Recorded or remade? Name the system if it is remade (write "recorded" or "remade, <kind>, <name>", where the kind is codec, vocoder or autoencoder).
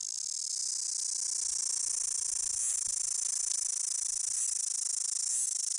recorded